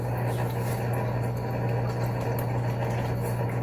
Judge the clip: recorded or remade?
recorded